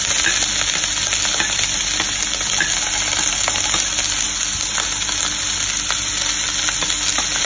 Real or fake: real